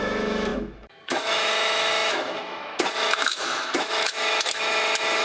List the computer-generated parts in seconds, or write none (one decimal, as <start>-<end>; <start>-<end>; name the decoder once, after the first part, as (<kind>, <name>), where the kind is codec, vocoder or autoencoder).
0.0-5.2 (autoencoder, DAC-VAE)